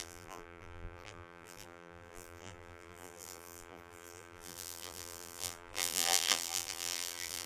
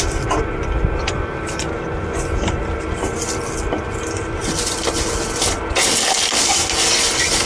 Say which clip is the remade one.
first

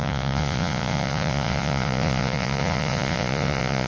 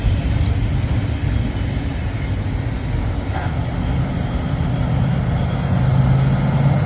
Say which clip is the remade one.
first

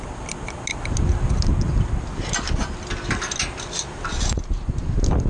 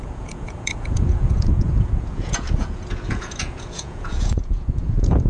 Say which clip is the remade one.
second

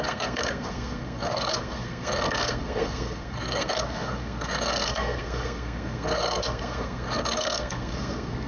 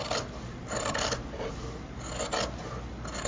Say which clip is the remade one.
first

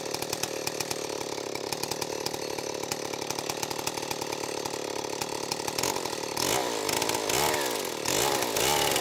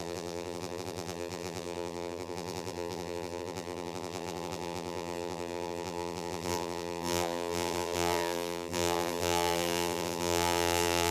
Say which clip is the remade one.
second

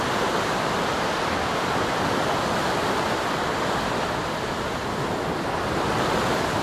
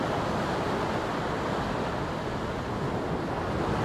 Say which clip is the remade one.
first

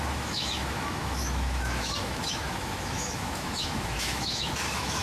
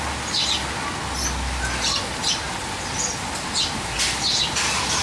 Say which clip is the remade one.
first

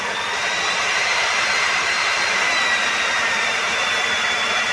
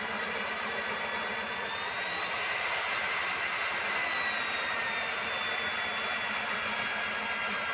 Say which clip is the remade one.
first